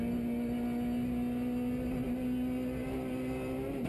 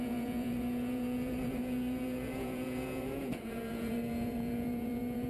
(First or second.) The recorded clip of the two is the first